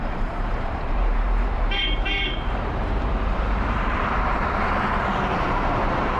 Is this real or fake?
fake